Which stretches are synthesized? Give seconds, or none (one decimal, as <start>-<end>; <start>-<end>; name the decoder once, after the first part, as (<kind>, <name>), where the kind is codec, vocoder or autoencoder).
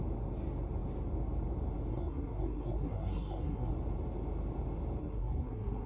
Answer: 1.9-3.7 (codec, SNAC); 5.0-5.9